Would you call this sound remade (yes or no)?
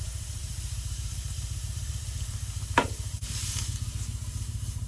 yes